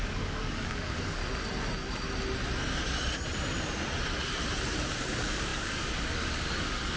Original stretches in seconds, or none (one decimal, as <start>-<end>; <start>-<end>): 1.2-5.0